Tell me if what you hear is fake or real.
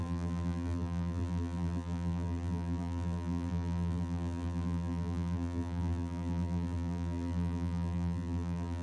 fake